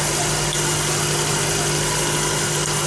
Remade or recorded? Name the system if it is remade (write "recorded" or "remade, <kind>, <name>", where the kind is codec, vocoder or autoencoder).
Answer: recorded